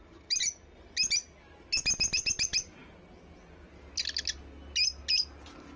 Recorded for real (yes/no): yes